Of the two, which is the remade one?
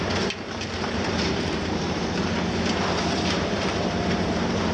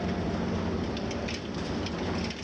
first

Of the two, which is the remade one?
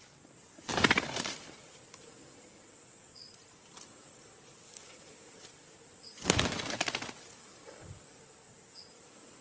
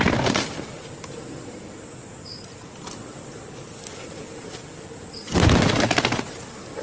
first